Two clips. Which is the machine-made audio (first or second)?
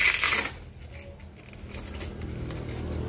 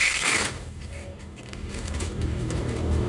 second